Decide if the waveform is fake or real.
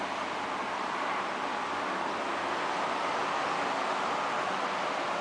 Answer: real